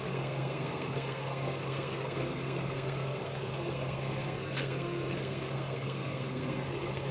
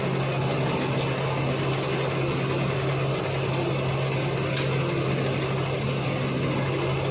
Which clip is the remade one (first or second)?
first